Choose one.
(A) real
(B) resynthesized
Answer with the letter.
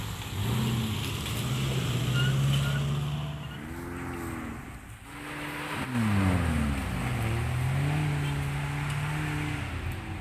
A